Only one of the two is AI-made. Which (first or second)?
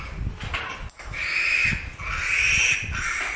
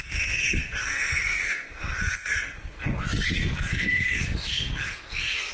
second